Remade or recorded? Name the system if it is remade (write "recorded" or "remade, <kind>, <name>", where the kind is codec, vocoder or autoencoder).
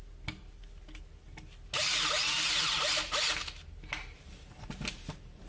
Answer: recorded